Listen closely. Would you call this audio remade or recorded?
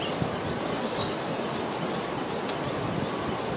recorded